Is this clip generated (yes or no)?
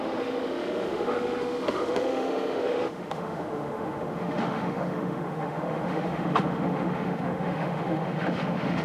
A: yes